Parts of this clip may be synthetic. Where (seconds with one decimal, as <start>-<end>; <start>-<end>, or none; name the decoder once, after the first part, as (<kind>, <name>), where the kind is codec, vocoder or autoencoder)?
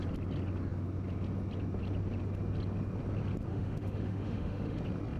3.5-4.8 (autoencoder, DAC-VAE)